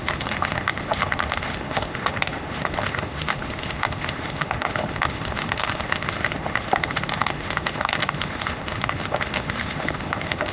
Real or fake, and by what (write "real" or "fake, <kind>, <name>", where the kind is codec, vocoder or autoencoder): fake, autoencoder, DAC-VAE